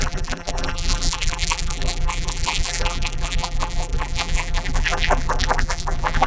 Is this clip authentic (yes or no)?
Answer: no